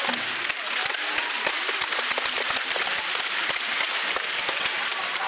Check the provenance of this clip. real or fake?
real